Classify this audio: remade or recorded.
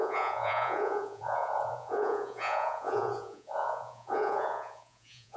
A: remade